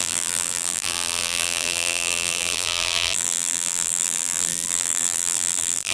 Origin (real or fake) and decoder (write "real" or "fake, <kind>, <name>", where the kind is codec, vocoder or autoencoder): fake, vocoder, BigVGAN v2